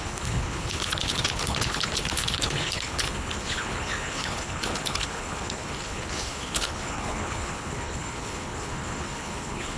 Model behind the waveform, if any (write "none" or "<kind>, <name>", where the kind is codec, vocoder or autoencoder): codec, HILCodec